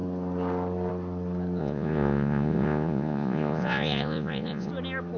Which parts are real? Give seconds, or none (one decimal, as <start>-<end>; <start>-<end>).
0.0-1.6; 4.7-5.2